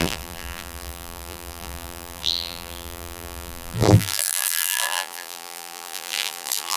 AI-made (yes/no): yes